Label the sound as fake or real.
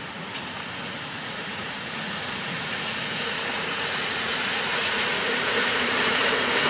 fake